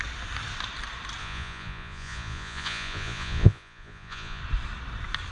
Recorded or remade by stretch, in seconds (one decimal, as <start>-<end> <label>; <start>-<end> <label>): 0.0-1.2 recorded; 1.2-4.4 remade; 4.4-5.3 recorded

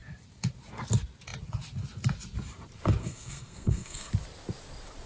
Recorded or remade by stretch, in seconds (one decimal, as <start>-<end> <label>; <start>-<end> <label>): 0.0-3.0 recorded; 3.0-4.1 remade; 4.1-5.1 recorded

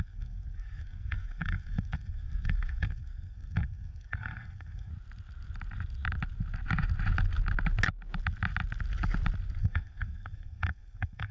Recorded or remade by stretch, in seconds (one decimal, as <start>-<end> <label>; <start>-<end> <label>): 0.0-4.9 remade; 4.9-9.6 recorded; 9.6-11.3 remade